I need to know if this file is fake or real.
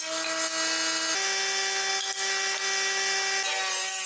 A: real